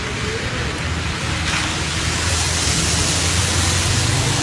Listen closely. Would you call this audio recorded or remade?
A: recorded